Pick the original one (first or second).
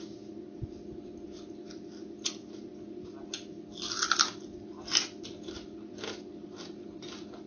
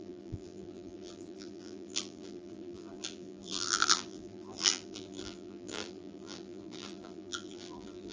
first